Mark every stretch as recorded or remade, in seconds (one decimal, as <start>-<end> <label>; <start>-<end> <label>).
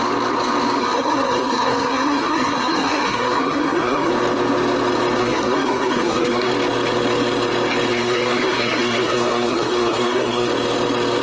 0.0-0.8 recorded; 0.8-4.1 remade; 4.1-5.2 recorded; 5.2-6.5 remade; 6.5-7.9 recorded; 7.9-10.5 remade; 10.5-11.2 recorded